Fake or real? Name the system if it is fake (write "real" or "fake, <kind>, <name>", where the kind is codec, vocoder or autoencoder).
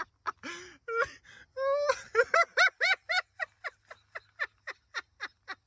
real